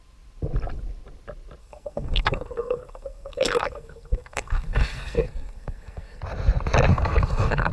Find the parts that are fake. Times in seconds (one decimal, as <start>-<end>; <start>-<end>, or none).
1.6-6.2; 6.9-7.7